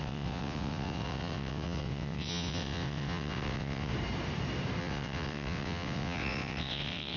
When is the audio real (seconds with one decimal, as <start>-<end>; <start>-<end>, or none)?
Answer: 3.9-4.8